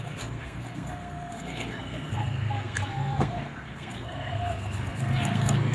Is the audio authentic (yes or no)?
no